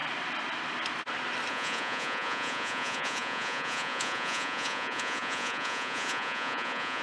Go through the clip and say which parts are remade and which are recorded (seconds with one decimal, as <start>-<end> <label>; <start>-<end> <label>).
0.0-1.5 recorded; 1.5-7.0 remade

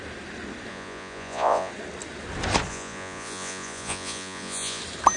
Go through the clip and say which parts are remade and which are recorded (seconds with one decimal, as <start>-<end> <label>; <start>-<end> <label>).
0.0-0.7 recorded; 0.7-1.7 remade; 1.7-2.7 recorded; 2.7-4.8 remade; 4.8-5.2 recorded

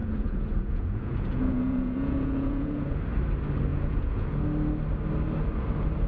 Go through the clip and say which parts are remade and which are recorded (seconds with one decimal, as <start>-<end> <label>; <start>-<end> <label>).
0.0-3.0 remade; 3.0-3.7 recorded; 3.7-4.4 remade; 4.4-6.1 recorded

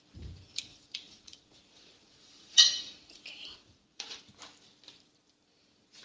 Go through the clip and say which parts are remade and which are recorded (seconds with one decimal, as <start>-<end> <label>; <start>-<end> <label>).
0.0-0.7 recorded; 0.7-3.2 remade; 3.2-3.6 recorded; 3.6-4.2 remade; 4.2-6.0 recorded

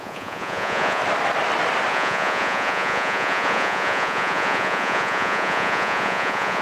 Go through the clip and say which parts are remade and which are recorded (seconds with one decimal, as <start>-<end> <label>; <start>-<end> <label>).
0.0-1.0 remade; 1.0-1.9 recorded; 1.9-6.6 remade

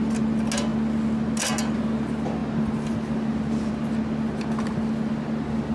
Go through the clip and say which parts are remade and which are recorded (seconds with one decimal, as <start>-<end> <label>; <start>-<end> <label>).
0.0-5.7 recorded

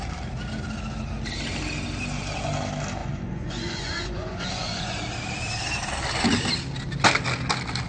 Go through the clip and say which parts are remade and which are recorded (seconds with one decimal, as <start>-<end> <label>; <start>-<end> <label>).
0.0-3.0 recorded; 3.0-5.0 remade; 5.0-7.9 recorded